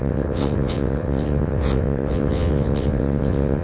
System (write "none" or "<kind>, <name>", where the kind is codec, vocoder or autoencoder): vocoder, WaveNeXt